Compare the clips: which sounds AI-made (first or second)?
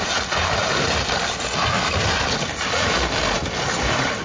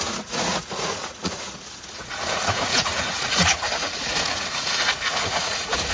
second